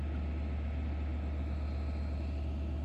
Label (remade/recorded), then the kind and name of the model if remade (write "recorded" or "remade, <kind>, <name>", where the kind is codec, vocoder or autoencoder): recorded